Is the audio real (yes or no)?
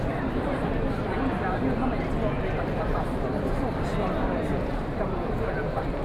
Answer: no